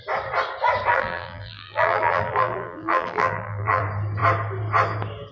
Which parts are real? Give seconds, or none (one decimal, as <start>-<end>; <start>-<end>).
0.0-0.9; 3.8-5.3